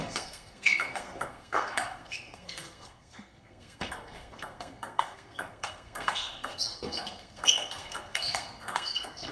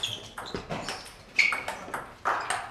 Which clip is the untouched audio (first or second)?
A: second